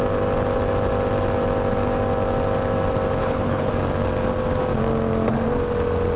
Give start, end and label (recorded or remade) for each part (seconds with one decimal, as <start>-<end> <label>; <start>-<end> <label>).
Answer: 0.0-3.2 recorded; 3.2-3.7 remade; 3.7-6.2 recorded